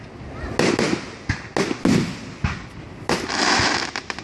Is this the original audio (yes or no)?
yes